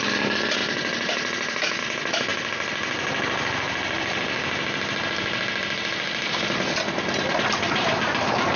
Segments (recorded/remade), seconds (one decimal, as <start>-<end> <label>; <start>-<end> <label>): 0.0-8.6 recorded

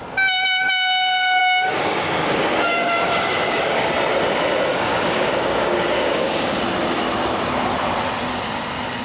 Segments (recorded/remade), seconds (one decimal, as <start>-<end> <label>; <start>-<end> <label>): 0.0-1.4 recorded; 1.4-3.9 remade; 3.9-4.7 recorded; 4.7-6.6 remade; 6.6-9.0 recorded

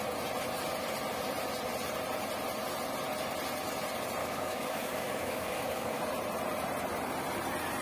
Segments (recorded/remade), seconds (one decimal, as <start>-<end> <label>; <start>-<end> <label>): 0.0-4.2 recorded; 4.2-6.0 remade; 6.0-7.8 recorded

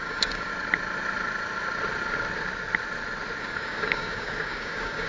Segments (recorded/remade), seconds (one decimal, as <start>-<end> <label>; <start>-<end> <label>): 0.0-0.5 remade; 0.5-3.4 recorded; 3.4-5.1 remade

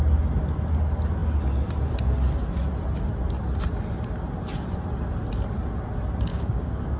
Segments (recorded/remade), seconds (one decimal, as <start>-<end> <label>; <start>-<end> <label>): 0.0-6.3 recorded; 6.3-7.0 remade

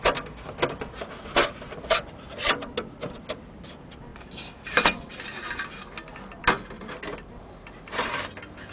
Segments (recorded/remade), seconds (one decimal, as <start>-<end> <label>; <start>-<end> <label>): 0.0-8.7 recorded